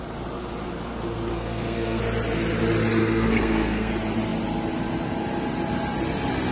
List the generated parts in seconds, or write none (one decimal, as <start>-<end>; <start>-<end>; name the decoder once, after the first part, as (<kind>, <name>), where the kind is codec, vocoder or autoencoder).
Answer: 1.3-2.0 (codec, SNAC); 3.0-3.9